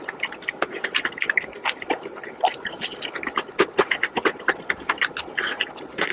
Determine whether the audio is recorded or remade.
recorded